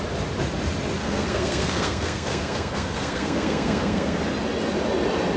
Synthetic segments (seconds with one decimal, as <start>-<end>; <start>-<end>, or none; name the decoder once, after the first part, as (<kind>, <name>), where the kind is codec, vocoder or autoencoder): 1.0-4.2 (codec, SNAC)